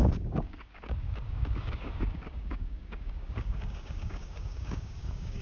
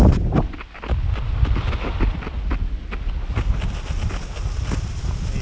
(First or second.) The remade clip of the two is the first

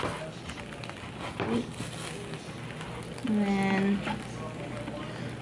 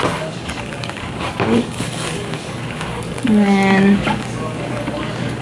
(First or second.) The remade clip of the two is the second